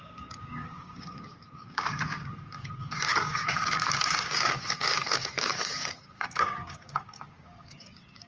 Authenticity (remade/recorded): remade